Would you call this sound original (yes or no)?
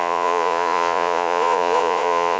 no